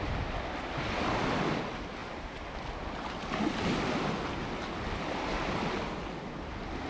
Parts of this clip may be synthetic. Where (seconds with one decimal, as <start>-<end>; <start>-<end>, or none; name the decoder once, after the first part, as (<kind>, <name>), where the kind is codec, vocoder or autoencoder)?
none